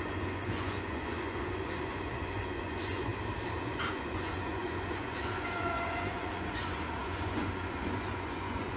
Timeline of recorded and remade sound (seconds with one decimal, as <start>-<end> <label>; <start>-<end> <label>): 0.0-3.1 remade; 3.1-3.6 recorded; 3.6-8.8 remade